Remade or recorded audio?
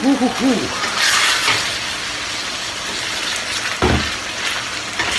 recorded